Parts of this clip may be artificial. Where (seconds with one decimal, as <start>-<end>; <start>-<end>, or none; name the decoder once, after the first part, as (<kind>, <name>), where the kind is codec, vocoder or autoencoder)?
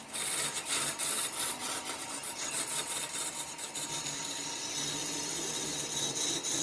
none